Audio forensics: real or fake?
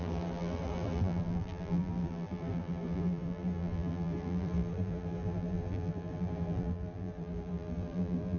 fake